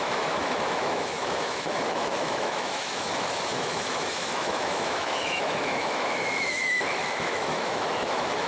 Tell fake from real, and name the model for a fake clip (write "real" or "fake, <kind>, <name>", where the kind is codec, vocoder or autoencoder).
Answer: fake, autoencoder, DAC-VAE